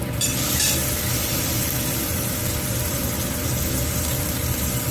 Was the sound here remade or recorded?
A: recorded